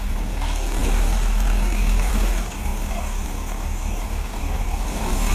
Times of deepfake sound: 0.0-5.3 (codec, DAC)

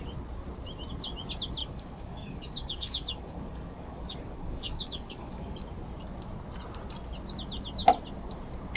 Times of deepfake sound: 1.6-5.6 (codec, DAC)

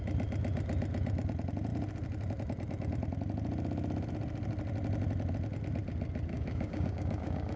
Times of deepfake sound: 6.3-7.6 (codec, DAC)

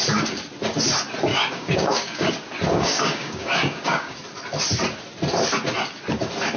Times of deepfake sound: 1.3-2.3 (codec, DAC); 2.7-4.2